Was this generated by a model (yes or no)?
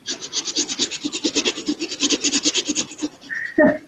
no